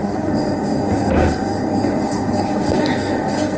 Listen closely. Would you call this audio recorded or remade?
remade